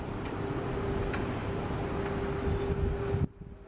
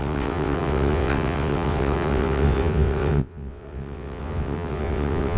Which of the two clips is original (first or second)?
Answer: first